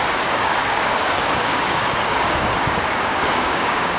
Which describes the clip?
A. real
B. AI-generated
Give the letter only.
B